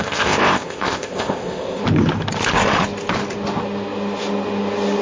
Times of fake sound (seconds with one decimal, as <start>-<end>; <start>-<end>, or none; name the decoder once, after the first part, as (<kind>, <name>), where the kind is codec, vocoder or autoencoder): 0.0-1.8 (codec, ZipCodec)